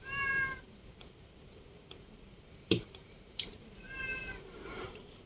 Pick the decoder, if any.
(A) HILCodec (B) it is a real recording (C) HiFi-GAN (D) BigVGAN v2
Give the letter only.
D